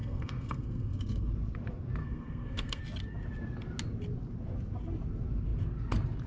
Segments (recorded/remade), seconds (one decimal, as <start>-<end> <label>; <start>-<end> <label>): 0.0-1.3 remade; 1.3-2.0 recorded; 2.0-2.8 remade; 2.8-6.3 recorded